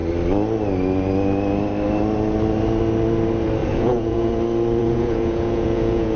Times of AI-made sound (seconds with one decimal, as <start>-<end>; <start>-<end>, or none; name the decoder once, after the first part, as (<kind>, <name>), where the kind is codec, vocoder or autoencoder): 3.6-4.3 (vocoder, Vocos); 4.8-6.2